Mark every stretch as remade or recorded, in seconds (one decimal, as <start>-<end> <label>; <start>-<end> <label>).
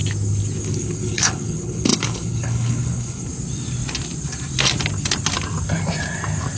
0.0-0.6 recorded; 0.6-3.3 remade; 3.3-6.6 recorded